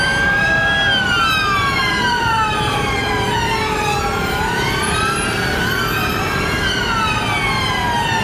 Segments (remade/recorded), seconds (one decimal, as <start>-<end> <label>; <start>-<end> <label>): 0.0-0.6 remade; 0.6-1.8 recorded; 1.8-3.0 remade; 3.0-8.2 recorded

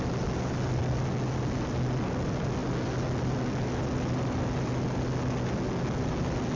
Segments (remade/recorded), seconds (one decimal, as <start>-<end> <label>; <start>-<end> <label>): 0.0-6.6 recorded